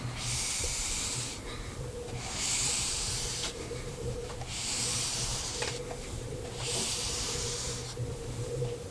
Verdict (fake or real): fake